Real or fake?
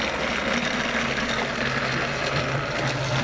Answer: real